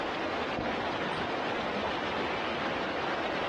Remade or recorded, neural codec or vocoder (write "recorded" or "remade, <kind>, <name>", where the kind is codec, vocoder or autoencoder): recorded